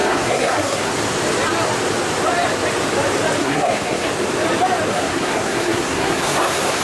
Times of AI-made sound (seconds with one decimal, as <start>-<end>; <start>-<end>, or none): 0.0-0.9; 3.4-4.1; 4.9-6.8